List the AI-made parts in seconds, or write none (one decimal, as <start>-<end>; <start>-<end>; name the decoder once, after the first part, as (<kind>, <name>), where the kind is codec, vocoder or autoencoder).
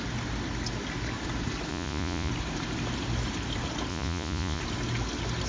1.7-2.3 (vocoder, Vocos); 3.9-4.6